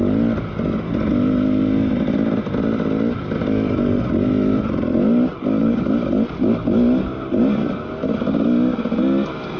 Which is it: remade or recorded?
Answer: recorded